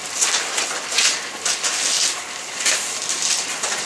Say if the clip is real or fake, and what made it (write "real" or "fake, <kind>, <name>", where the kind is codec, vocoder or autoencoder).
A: real